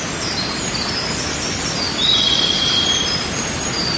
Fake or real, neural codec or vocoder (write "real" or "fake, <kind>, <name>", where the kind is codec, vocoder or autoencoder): fake, vocoder, BigVGAN v2